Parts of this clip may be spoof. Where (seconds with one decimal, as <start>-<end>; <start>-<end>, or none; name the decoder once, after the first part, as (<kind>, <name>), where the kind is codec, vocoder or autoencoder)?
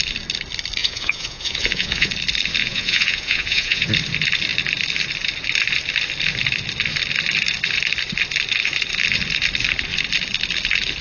0.8-2.1 (vocoder, Vocos); 2.6-3.9